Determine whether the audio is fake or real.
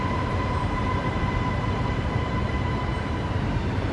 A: fake